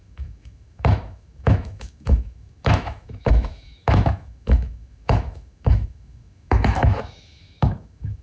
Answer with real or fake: fake